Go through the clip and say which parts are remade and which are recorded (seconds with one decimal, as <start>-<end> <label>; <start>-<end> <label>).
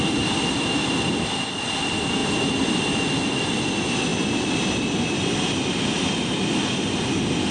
0.0-7.5 recorded